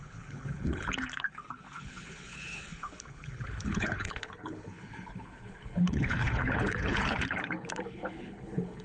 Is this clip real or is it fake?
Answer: fake